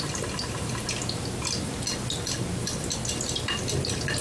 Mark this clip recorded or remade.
recorded